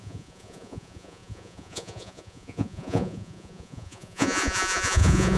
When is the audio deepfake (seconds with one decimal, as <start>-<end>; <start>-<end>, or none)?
0.0-5.4